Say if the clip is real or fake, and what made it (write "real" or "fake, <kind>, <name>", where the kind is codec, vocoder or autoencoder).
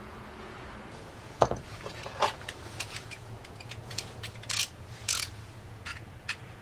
fake, vocoder, Vocos